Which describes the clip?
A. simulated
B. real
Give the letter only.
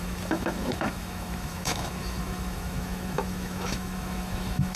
A